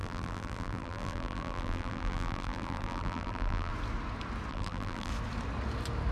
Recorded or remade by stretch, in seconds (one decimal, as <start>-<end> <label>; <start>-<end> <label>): 0.0-3.7 remade; 3.7-4.5 recorded; 4.5-5.1 remade; 5.1-6.1 recorded